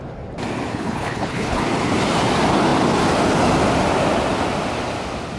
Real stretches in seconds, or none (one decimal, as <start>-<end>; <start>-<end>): 0.0-0.7; 1.6-5.4